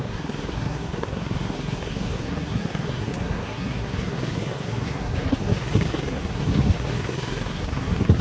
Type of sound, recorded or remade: remade